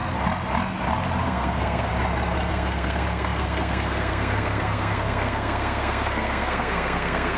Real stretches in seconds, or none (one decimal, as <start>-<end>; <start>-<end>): 0.0-1.2; 1.9-2.5